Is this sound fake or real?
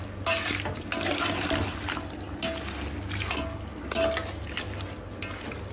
real